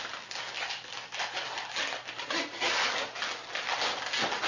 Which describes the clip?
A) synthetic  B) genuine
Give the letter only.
B